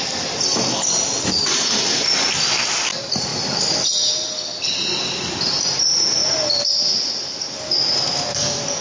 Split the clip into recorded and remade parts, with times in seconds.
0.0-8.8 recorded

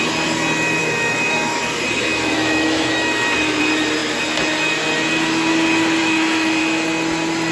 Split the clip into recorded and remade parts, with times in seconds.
0.0-0.8 recorded; 0.8-1.6 remade; 1.6-2.1 recorded; 2.1-3.6 remade; 3.6-6.0 recorded; 6.0-6.6 remade; 6.6-7.5 recorded

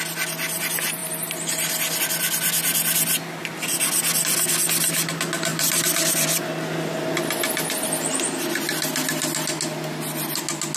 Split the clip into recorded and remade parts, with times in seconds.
0.0-5.5 recorded; 5.5-6.4 remade; 6.4-10.8 recorded